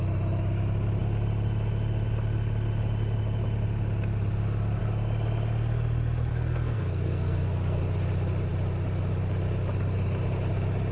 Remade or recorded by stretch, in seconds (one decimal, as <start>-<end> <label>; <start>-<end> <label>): 0.0-6.3 recorded; 6.3-7.8 remade; 7.8-10.9 recorded